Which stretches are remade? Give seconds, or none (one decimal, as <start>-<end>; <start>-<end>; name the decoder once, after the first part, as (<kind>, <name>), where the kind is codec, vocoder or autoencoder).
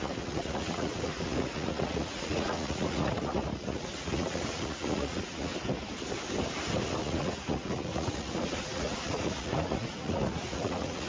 0.0-5.5 (vocoder, Vocos); 7.0-11.1